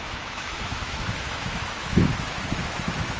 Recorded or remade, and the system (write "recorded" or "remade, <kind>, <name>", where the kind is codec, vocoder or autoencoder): remade, autoencoder, DAC-VAE